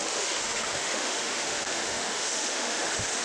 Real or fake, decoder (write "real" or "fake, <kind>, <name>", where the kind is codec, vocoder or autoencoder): fake, autoencoder, DAC-VAE